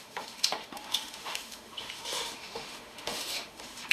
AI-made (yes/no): yes